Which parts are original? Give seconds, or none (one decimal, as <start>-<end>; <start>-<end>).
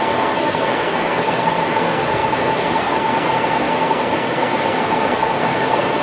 none